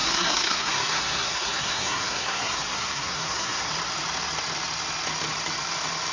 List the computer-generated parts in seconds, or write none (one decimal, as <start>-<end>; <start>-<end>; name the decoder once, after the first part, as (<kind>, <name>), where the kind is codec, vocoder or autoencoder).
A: 0.0-3.7 (codec, SNAC)